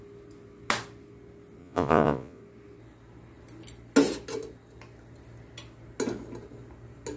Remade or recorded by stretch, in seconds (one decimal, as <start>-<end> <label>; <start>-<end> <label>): 0.0-1.6 recorded; 1.6-2.4 remade; 2.4-7.2 recorded